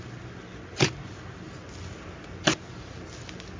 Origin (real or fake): real